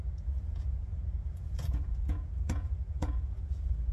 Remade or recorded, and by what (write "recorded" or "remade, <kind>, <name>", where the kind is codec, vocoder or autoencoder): remade, vocoder, Vocos